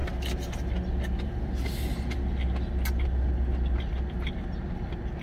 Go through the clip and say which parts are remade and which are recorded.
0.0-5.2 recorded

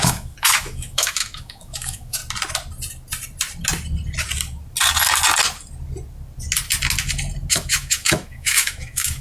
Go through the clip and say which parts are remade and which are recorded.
0.0-2.2 remade; 2.2-7.5 recorded; 7.5-9.2 remade